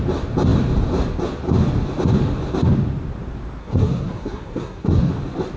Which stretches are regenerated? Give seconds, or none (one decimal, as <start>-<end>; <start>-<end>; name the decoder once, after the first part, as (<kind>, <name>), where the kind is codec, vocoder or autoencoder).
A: 3.6-5.1 (codec, SNAC)